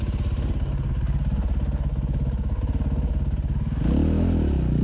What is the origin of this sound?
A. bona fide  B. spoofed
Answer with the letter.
A